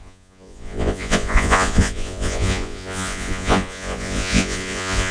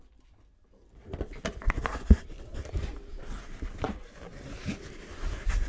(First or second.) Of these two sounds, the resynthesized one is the first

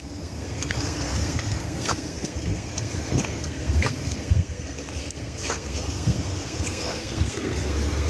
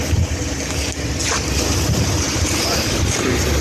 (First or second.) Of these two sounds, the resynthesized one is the first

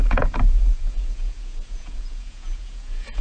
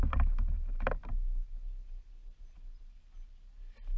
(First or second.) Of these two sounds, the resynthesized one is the first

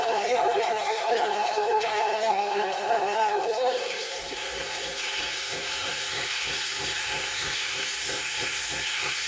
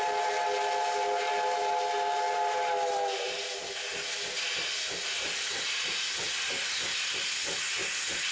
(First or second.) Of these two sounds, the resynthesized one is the first